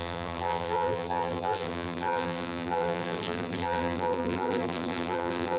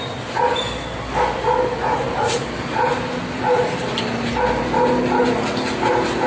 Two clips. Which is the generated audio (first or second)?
first